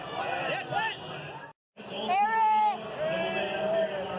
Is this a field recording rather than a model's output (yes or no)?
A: yes